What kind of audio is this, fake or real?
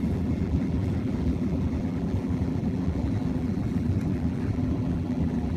fake